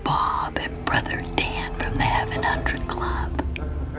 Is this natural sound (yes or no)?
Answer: yes